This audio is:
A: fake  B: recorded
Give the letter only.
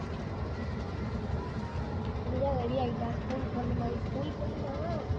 B